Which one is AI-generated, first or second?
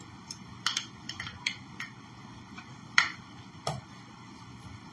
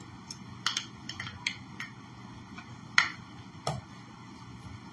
first